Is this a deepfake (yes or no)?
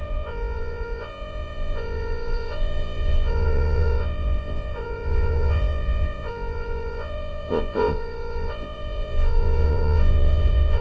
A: yes